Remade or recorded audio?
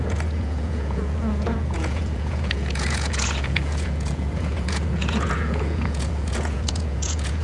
remade